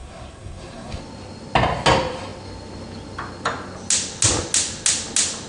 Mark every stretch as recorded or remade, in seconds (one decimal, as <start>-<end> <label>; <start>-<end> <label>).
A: 0.0-1.0 remade; 1.0-5.5 recorded